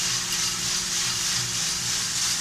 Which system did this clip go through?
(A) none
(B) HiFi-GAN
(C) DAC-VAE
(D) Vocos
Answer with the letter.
A